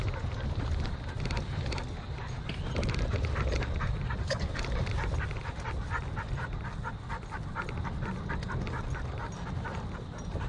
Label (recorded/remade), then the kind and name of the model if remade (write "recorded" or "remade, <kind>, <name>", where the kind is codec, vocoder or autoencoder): recorded